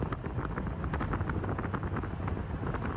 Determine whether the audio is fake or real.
real